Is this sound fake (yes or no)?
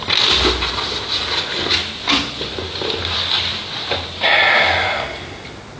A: no